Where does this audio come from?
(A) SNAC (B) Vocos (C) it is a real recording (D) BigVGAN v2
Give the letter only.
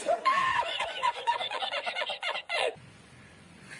B